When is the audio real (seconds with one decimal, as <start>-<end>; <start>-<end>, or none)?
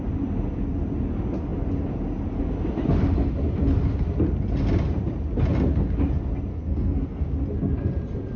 0.0-6.5; 7.2-8.4